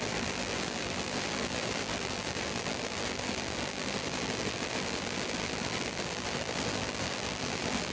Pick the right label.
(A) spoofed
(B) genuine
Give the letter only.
A